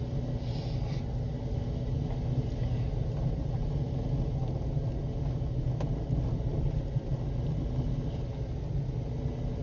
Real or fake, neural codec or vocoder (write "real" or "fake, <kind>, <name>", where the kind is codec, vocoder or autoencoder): real